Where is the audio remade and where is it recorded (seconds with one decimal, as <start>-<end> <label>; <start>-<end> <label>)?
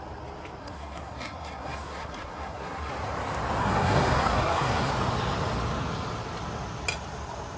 0.0-0.6 recorded; 0.6-2.9 remade; 2.9-3.6 recorded; 3.6-4.9 remade; 4.9-7.6 recorded